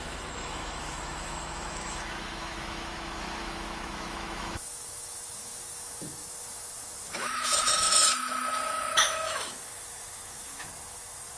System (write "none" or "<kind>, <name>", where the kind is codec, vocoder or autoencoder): autoencoder, DAC-VAE